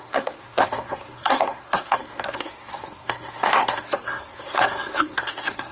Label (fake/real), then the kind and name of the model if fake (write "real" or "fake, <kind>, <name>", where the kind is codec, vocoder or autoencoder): fake, codec, SNAC